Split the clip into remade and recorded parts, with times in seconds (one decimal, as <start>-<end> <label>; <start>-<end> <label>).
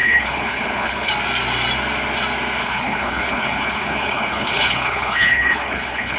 0.0-1.1 remade; 1.1-2.6 recorded; 2.6-6.2 remade